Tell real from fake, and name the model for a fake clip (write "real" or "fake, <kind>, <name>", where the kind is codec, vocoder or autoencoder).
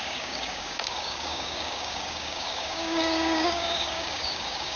fake, codec, DAC